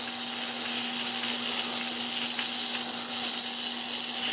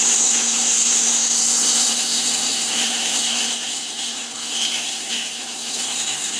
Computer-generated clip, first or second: second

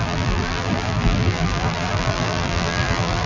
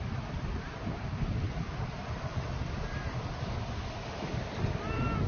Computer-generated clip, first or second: first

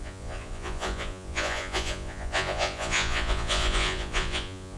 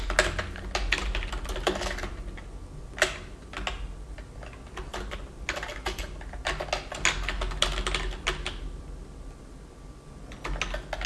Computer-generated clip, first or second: first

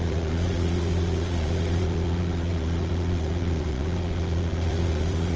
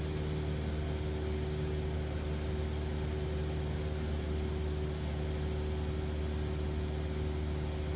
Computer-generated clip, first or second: first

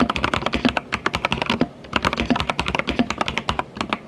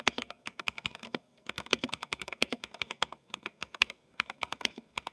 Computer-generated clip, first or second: second